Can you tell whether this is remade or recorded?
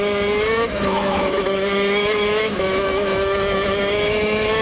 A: remade